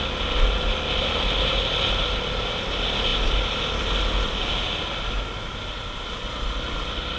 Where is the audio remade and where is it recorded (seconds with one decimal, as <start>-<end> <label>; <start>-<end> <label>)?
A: 0.0-7.2 recorded